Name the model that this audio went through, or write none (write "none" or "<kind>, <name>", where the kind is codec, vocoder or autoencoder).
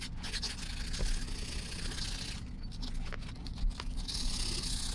none